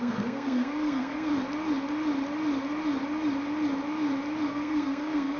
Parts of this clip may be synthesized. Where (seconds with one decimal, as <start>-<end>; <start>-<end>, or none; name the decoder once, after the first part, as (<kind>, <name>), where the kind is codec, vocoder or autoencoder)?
0.0-1.3 (codec, SNAC); 4.5-5.4